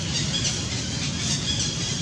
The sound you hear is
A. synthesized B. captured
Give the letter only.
B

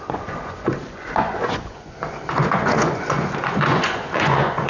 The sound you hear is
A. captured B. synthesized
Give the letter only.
B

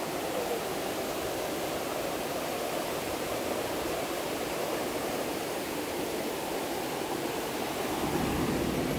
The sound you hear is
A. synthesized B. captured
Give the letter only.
A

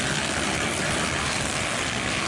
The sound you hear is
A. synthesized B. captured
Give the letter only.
B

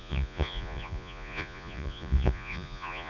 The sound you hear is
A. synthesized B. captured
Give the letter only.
A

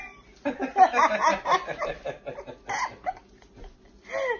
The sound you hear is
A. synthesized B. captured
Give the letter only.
B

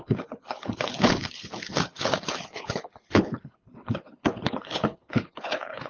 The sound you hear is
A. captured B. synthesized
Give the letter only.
B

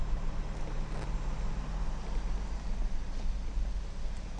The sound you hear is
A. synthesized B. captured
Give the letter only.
B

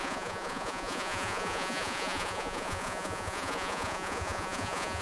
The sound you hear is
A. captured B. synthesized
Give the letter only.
B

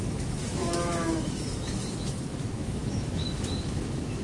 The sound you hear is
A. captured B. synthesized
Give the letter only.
B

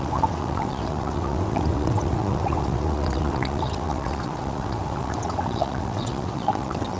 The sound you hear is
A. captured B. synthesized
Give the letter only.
B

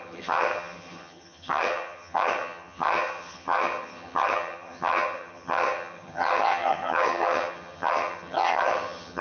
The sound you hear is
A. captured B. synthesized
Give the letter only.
B